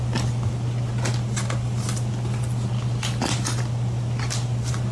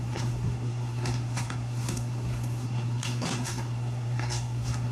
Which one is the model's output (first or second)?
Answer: second